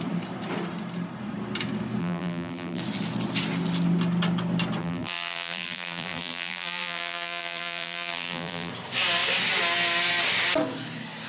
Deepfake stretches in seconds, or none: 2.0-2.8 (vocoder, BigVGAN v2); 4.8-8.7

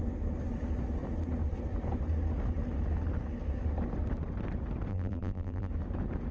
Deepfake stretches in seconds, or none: 4.9-5.7 (vocoder, BigVGAN v2)

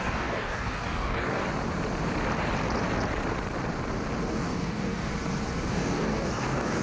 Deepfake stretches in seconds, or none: 0.0-1.4 (codec, DAC); 4.3-5.1; 5.7-6.8

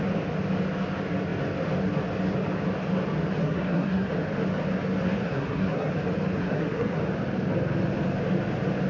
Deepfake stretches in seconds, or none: 3.4-4.1 (codec, SNAC); 5.0-5.9; 6.4-7.0

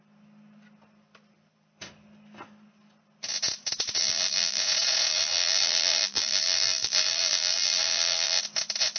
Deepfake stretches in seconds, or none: 4.0-4.6 (vocoder, BigVGAN v2); 5.1-8.4

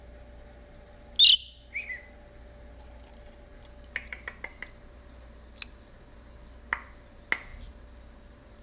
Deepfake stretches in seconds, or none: none

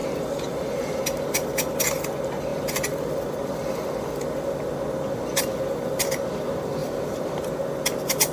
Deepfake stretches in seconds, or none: 0.0-1.0 (vocoder, BigVGAN v2); 6.8-7.5